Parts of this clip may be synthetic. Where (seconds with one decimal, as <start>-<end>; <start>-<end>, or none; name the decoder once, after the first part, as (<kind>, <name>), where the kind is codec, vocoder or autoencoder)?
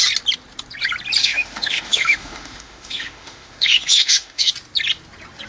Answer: 1.2-4.5 (autoencoder, DAC-VAE)